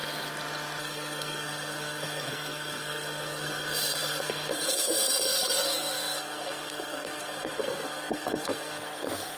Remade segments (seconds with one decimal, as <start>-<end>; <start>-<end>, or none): 0.8-9.4